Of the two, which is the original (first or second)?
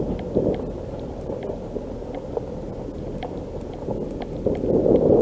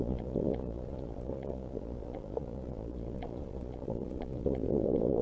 first